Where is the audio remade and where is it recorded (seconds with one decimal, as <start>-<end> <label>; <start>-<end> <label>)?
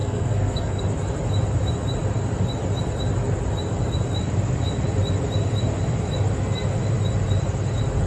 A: 0.0-0.8 remade; 0.8-8.1 recorded